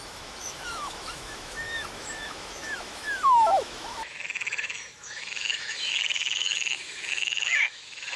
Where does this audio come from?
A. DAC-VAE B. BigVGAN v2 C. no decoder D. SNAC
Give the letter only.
A